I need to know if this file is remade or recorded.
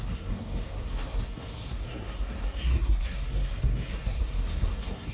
remade